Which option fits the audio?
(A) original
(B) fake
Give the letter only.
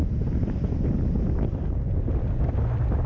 A